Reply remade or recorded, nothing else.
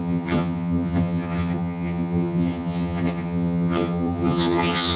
remade